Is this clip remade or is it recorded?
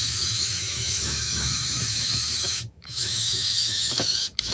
remade